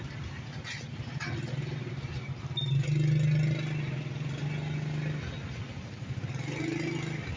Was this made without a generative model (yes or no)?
yes